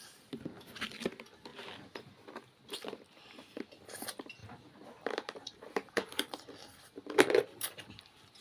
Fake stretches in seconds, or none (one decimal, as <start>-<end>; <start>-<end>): 4.4-8.0